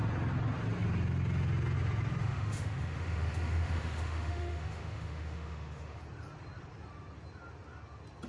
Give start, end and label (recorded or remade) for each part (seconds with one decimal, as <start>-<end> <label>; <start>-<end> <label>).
0.0-2.2 recorded; 2.2-6.0 remade; 6.0-8.3 recorded